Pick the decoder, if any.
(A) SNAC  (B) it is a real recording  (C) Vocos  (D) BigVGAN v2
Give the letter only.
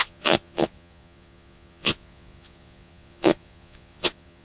C